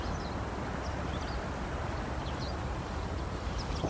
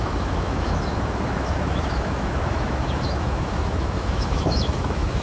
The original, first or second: first